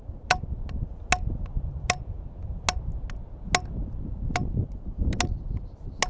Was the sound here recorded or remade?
recorded